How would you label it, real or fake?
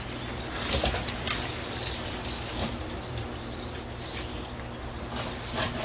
real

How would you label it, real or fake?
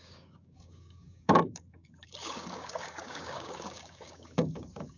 fake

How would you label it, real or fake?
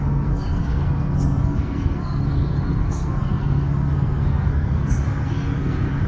fake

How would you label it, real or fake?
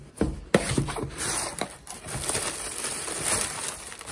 fake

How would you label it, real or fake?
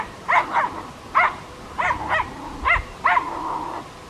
real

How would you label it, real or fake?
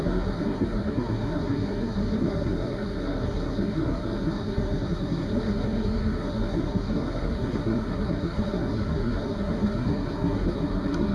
fake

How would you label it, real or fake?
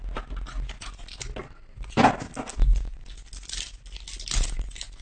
real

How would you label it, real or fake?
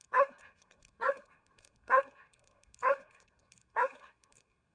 fake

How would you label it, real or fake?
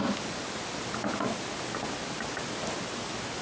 real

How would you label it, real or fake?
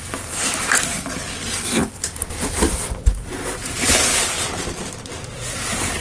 real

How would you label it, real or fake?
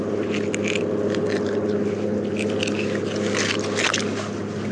real